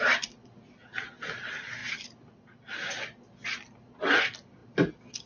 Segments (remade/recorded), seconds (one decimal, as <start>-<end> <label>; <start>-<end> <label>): 0.0-5.3 recorded